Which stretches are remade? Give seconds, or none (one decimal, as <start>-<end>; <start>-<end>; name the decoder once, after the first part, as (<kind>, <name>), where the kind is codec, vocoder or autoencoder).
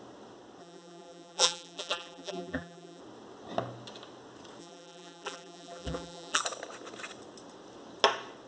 0.6-3.0 (vocoder, BigVGAN v2); 4.6-6.4